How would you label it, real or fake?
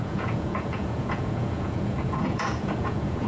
fake